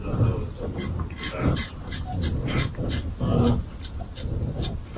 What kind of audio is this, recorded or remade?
recorded